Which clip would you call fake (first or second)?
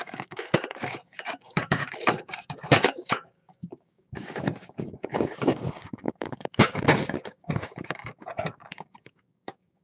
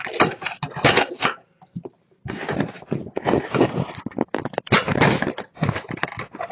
first